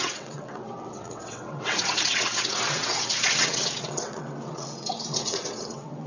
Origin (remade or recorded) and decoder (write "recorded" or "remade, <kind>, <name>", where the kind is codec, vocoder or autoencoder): remade, vocoder, WaveNeXt